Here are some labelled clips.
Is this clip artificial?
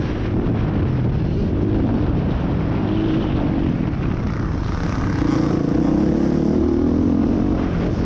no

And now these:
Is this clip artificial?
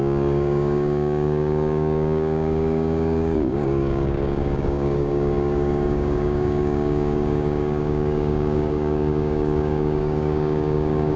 yes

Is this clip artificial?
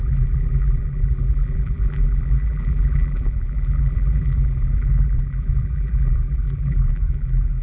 yes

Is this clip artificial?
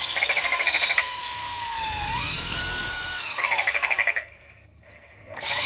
yes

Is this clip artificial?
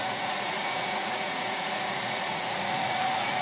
yes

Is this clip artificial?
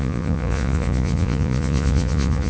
yes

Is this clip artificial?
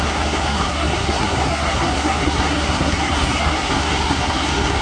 yes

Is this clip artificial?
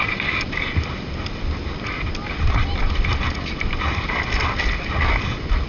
no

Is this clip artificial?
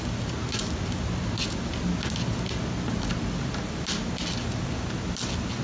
no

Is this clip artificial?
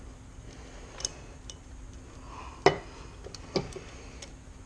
no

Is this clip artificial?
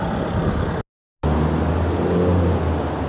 no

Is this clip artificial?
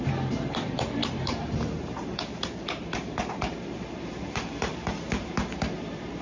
yes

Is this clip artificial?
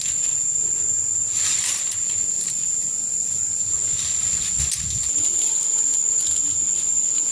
no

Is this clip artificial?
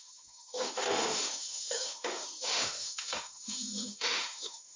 yes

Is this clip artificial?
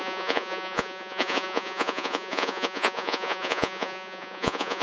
yes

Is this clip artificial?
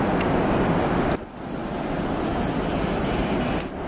yes